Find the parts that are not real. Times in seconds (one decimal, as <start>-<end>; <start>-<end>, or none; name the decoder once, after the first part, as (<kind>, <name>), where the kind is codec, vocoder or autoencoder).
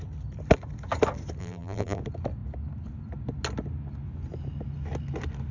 1.4-2.0 (vocoder, BigVGAN v2)